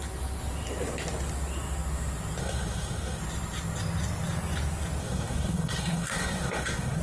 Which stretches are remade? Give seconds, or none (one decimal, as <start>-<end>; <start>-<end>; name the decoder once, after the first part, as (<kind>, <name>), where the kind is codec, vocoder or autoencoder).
2.4-3.2 (codec, SNAC); 5.0-7.0